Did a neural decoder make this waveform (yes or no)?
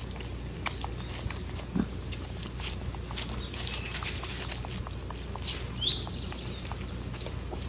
no